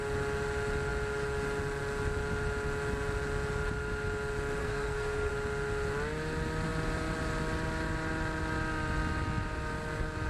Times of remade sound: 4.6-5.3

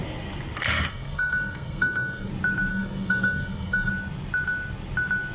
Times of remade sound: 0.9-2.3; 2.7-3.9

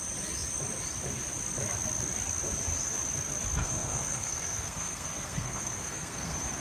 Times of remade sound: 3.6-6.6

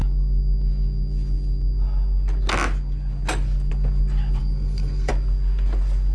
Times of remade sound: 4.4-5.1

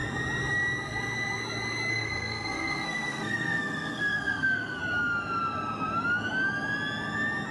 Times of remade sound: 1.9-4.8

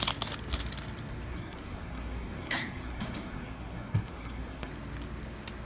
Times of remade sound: 1.3-4.7

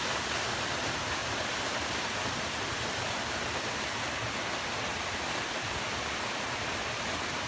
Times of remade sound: none